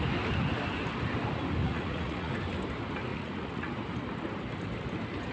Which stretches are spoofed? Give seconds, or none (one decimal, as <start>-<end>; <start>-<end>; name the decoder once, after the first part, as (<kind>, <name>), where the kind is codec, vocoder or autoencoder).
1.6-2.3 (vocoder, Vocos); 3.1-3.7